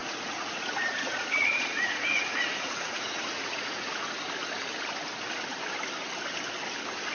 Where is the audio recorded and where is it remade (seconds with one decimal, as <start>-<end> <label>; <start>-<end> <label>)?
0.0-4.2 remade; 4.2-7.1 recorded